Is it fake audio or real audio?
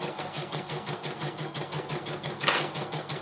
fake